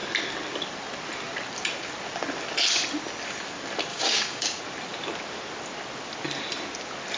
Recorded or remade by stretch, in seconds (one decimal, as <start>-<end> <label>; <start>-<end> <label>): 0.0-3.9 recorded; 3.9-4.6 remade; 4.6-7.2 recorded